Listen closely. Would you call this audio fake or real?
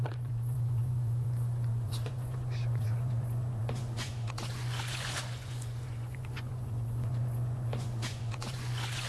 fake